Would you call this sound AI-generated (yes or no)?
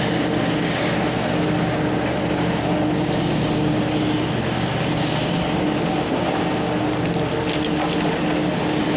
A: no